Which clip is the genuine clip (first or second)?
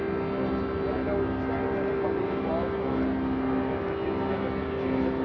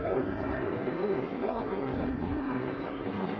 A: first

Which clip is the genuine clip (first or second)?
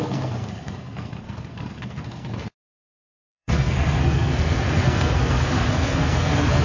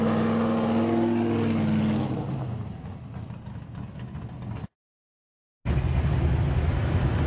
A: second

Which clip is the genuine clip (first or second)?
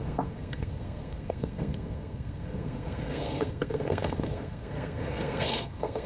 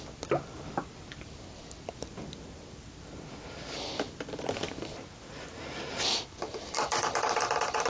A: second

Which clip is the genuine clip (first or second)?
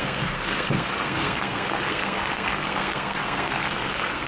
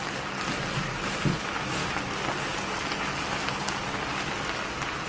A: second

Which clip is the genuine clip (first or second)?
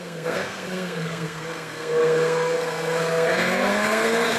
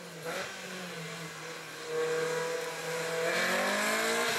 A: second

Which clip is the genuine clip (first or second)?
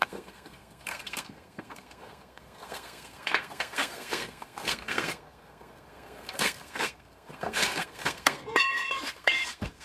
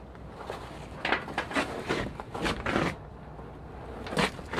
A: second